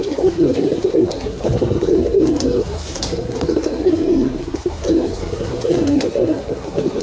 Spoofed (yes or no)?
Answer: yes